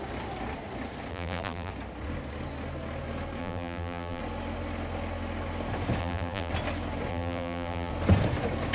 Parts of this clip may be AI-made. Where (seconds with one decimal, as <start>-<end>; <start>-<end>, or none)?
1.1-1.7; 3.4-4.2; 6.0-6.5; 7.1-7.9